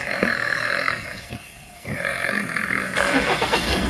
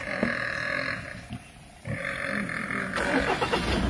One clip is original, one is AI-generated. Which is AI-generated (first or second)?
first